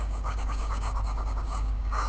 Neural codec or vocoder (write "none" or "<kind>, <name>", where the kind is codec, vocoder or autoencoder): codec, DAC